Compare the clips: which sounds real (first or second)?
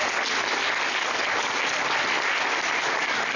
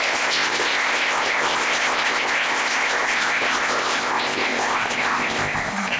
first